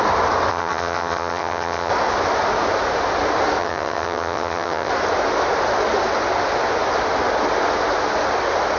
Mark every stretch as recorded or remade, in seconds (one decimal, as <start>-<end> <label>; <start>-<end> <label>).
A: 0.0-0.5 recorded; 0.5-1.9 remade; 1.9-3.6 recorded; 3.6-4.9 remade; 4.9-8.8 recorded